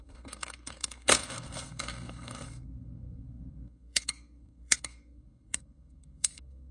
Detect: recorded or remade remade